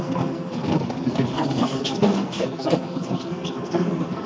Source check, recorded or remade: remade